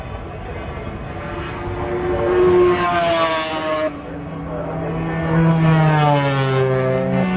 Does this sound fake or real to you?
real